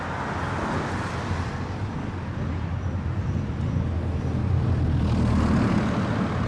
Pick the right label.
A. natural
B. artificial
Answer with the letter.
A